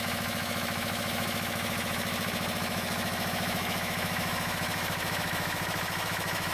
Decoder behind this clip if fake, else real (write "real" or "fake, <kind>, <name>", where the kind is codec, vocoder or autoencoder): fake, autoencoder, DAC-VAE